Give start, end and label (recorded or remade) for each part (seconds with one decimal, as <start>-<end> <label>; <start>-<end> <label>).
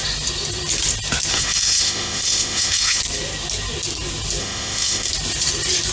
0.0-1.3 recorded; 1.3-3.0 remade; 3.0-4.4 recorded; 4.4-5.1 remade; 5.1-5.9 recorded